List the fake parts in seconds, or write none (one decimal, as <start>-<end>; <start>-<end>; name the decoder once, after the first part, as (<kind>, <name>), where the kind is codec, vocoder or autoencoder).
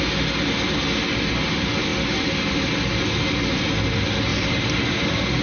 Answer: none